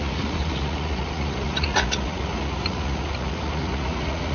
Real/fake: fake